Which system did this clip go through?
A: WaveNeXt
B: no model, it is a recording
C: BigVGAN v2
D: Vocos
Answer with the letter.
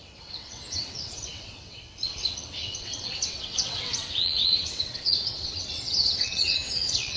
A